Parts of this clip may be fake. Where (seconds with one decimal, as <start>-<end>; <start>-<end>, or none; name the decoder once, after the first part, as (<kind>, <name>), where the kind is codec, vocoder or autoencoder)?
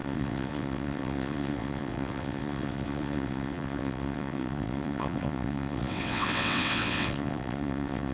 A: 0.0-8.1 (vocoder, WaveNeXt)